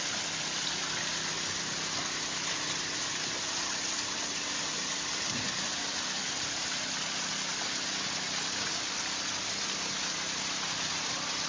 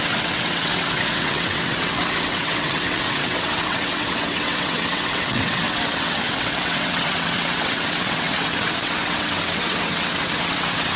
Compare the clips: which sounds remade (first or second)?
second